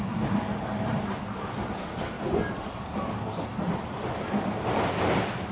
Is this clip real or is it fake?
real